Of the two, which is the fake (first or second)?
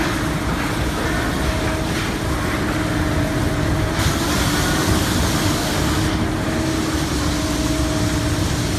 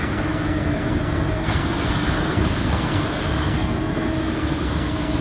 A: second